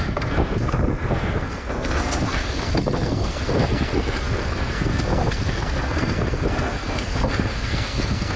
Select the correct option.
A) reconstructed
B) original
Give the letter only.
A